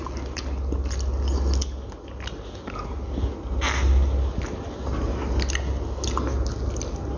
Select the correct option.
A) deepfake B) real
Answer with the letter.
B